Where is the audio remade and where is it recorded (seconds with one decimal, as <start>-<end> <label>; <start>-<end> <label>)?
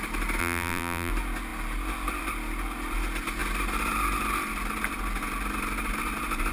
0.0-0.4 recorded; 0.4-1.1 remade; 1.1-6.5 recorded